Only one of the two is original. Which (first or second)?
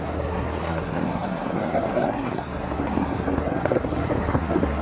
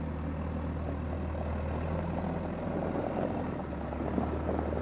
second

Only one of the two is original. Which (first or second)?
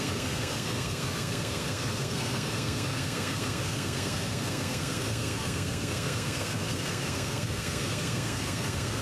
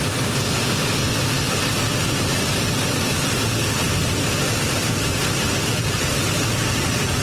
second